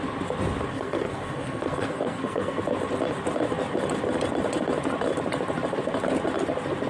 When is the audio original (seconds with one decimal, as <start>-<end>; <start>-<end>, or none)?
0.0-0.7; 2.6-6.9